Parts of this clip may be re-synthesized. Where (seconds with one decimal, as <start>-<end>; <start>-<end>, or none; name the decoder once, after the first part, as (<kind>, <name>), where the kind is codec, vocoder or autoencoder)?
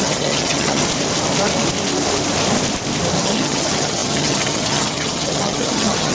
0.0-0.8 (vocoder, HiFi-GAN); 3.2-6.1